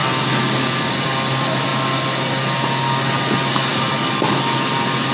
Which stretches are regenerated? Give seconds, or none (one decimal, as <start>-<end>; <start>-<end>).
none